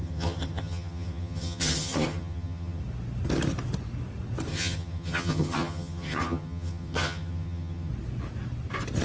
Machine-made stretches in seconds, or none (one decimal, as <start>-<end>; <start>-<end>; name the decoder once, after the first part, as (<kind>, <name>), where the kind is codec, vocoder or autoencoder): 0.0-2.8 (vocoder, HiFi-GAN); 4.5-7.9